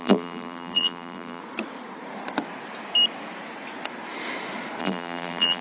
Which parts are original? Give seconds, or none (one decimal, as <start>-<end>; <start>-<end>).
1.4-4.8